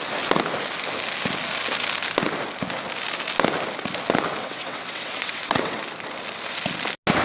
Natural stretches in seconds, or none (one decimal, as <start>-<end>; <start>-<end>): 0.0-4.4; 5.8-7.2